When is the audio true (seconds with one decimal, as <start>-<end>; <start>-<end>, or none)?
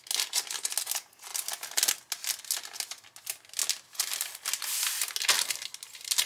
0.0-6.3